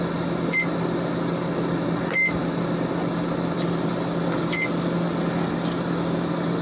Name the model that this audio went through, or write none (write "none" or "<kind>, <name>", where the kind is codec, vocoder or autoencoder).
none